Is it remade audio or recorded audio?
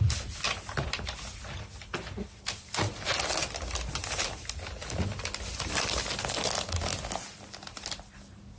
recorded